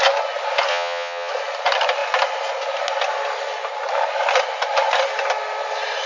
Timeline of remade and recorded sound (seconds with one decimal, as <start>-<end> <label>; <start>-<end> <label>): 0.0-0.7 recorded; 0.7-1.3 remade; 1.3-6.1 recorded